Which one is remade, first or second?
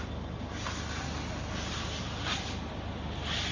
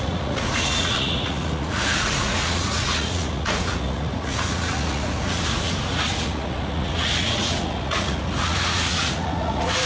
second